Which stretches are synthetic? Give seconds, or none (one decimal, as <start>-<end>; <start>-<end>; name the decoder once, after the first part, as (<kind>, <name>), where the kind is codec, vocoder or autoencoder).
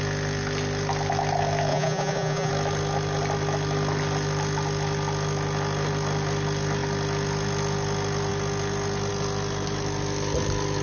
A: 1.7-2.5 (vocoder, Vocos)